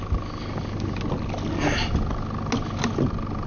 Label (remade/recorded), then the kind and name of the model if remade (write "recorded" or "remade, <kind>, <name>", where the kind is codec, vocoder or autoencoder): recorded